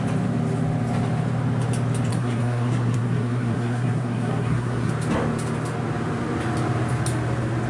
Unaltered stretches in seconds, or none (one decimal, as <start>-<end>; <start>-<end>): 0.0-2.1; 4.9-7.7